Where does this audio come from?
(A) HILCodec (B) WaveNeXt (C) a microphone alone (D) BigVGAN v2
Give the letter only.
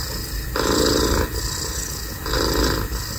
C